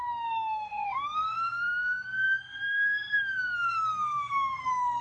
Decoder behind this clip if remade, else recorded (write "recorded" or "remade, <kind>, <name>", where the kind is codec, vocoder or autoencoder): remade, codec, SNAC